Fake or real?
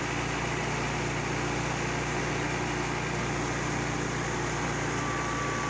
real